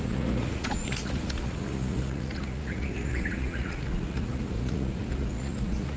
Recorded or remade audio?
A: remade